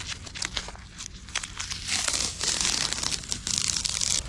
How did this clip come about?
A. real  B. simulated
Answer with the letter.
A